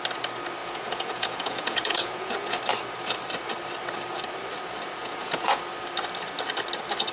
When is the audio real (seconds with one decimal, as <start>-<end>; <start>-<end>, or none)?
0.0-0.6; 2.6-5.0; 5.6-7.1